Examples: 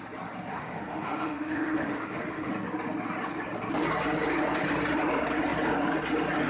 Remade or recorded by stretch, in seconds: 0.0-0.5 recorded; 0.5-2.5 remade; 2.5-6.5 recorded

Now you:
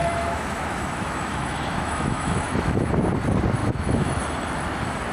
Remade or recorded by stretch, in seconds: 0.0-2.9 remade; 2.9-3.6 recorded; 3.6-4.2 remade; 4.2-5.1 recorded

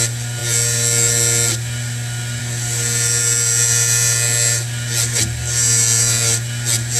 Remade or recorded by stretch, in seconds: 0.0-7.0 recorded

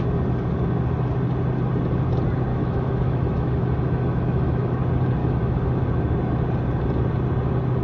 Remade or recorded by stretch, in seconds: 0.0-2.5 recorded; 2.5-4.8 remade; 4.8-5.2 recorded; 5.2-5.8 remade; 5.8-7.8 recorded

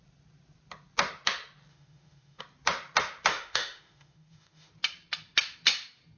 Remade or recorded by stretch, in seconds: 0.0-1.7 recorded; 1.7-2.4 remade; 2.4-3.3 recorded; 3.3-4.7 remade; 4.7-6.2 recorded